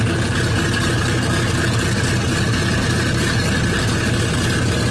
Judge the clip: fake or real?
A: real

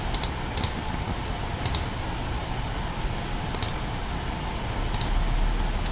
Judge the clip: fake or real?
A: real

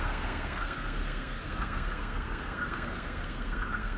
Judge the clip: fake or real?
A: fake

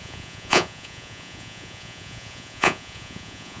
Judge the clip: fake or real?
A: fake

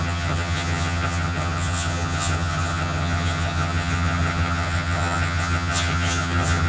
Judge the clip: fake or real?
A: fake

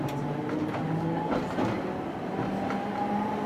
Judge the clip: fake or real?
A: real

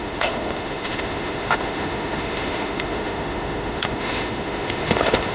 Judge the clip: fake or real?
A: fake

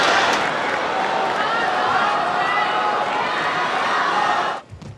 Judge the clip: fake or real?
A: real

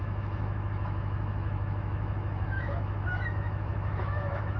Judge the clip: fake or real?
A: fake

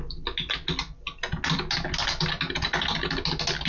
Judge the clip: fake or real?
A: real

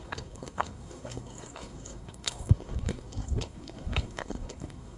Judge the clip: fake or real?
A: fake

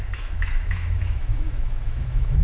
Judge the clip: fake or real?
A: fake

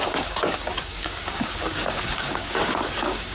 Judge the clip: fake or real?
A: fake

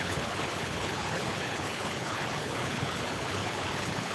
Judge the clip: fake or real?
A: fake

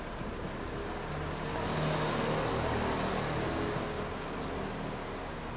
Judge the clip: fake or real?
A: real